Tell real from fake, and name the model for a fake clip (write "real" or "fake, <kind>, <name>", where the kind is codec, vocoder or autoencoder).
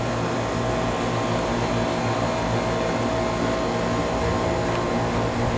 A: real